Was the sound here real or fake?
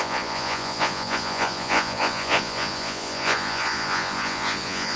fake